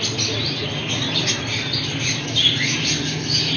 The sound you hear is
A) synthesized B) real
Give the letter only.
B